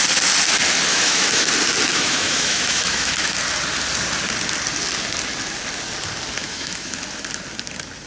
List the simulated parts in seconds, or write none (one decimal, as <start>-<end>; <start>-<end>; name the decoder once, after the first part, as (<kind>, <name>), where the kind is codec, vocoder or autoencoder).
0.9-1.5 (autoencoder, DAC-VAE); 1.9-3.3; 6.4-7.0